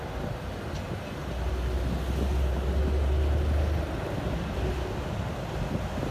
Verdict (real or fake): real